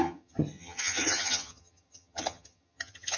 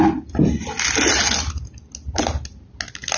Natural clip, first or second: second